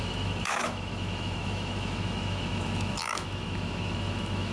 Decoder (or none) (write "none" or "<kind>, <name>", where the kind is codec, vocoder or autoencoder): autoencoder, DAC-VAE